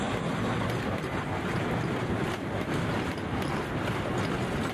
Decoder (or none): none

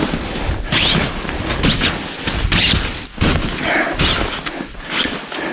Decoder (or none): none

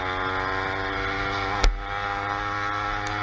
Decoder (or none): none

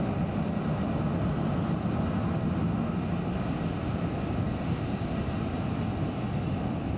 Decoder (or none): none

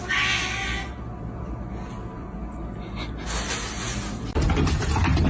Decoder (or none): none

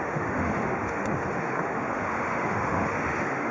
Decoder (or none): autoencoder, DAC-VAE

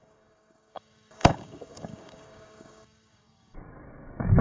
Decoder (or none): codec, DAC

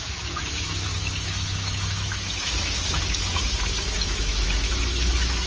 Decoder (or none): autoencoder, DAC-VAE